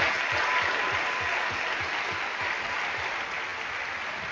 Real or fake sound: real